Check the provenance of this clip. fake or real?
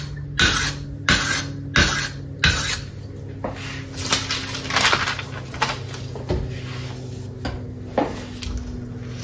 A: real